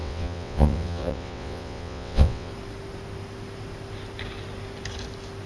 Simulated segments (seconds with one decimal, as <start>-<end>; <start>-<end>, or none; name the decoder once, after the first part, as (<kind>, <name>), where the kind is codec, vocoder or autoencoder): 0.0-2.5 (vocoder, WaveNeXt)